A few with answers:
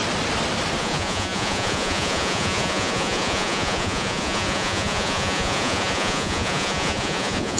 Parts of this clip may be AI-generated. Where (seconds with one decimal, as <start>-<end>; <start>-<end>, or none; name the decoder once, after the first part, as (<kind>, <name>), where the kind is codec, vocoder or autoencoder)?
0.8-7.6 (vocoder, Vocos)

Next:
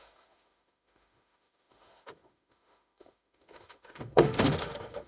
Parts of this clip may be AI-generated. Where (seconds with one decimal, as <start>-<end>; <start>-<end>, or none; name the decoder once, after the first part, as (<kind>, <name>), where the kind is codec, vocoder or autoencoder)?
0.0-5.1 (autoencoder, DAC-VAE)

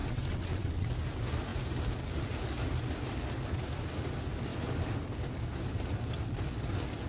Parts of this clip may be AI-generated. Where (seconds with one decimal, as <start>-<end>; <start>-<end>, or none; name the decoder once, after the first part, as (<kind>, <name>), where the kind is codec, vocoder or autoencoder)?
0.0-0.9 (vocoder, WaveNeXt)